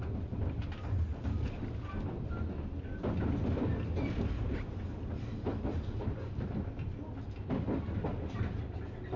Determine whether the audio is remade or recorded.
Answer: recorded